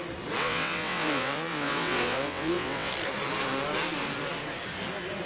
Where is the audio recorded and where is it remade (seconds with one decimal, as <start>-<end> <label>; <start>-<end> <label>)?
0.0-0.4 recorded; 0.4-2.9 remade; 2.9-5.3 recorded